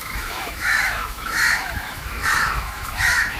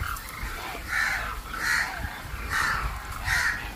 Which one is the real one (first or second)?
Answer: second